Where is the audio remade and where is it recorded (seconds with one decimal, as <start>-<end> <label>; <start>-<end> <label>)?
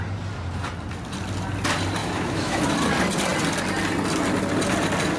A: 0.0-2.0 recorded; 2.0-2.6 remade; 2.6-5.2 recorded